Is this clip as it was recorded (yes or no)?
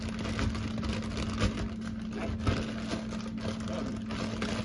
yes